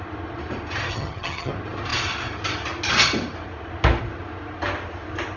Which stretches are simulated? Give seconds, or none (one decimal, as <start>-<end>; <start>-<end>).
0.9-1.5